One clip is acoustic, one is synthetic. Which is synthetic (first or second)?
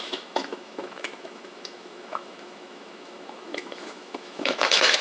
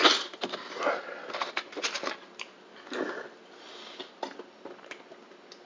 first